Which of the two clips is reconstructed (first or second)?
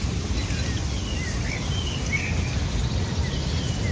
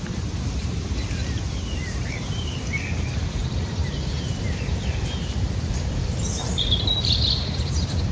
second